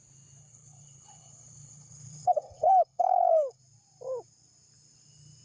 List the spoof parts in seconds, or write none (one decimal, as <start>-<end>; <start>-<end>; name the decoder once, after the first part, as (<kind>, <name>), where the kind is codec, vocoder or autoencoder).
0.4-3.6 (codec, HILCodec)